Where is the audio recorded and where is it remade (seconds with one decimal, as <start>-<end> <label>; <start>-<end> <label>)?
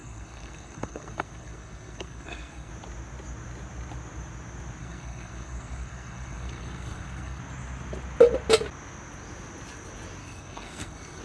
0.0-2.7 remade; 2.7-4.8 recorded; 4.8-7.4 remade; 7.4-10.2 recorded; 10.2-11.2 remade